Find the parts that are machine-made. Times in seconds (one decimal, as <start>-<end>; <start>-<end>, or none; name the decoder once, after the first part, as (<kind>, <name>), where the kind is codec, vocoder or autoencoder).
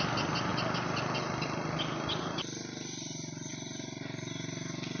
none